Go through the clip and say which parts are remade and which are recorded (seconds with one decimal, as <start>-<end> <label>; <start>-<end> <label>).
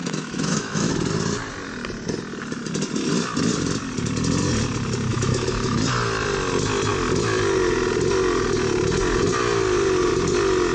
0.0-0.9 remade; 0.9-5.1 recorded; 5.1-5.8 remade; 5.8-10.7 recorded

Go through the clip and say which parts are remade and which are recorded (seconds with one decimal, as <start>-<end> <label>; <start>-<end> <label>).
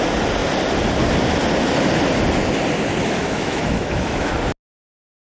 0.0-3.0 recorded; 3.0-4.3 remade; 4.3-5.4 recorded